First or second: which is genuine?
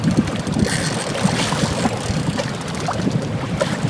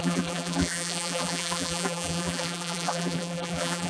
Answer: first